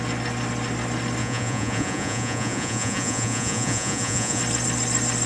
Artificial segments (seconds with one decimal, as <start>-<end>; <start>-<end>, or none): 1.2-4.4